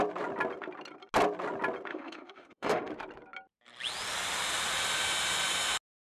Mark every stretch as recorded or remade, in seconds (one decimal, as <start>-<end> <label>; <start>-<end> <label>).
0.0-1.9 recorded; 1.9-2.9 remade; 2.9-6.1 recorded